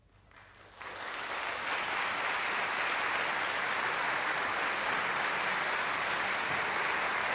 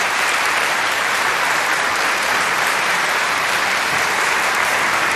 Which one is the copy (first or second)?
second